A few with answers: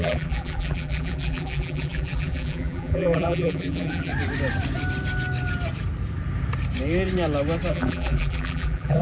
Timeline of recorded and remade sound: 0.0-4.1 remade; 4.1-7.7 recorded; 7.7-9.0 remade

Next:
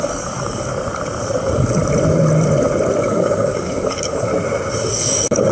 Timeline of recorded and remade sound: 0.0-0.7 remade; 0.7-1.4 recorded; 1.4-1.8 remade; 1.8-3.0 recorded; 3.0-4.3 remade; 4.3-4.9 recorded; 4.9-5.5 remade

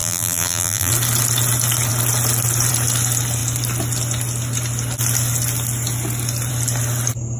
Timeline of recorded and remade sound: 0.0-0.9 remade; 0.9-7.4 recorded

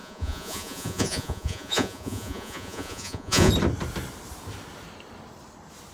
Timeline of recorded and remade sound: 0.0-3.5 remade; 3.5-5.9 recorded

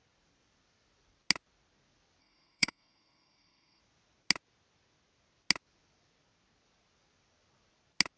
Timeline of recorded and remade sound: 0.0-2.2 recorded; 2.2-3.8 remade; 3.8-8.2 recorded

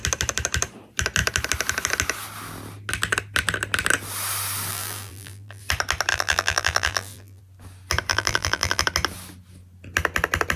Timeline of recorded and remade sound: 0.0-4.7 recorded; 4.7-5.6 remade; 5.6-6.1 recorded; 6.1-7.4 remade; 7.4-8.1 recorded; 8.1-8.8 remade; 8.8-10.6 recorded